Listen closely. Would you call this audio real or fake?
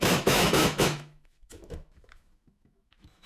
fake